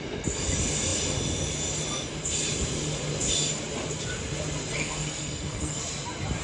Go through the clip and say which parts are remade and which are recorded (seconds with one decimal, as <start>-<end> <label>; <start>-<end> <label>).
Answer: 0.0-4.7 recorded; 4.7-5.8 remade; 5.8-6.4 recorded